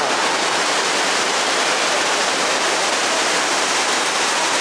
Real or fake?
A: real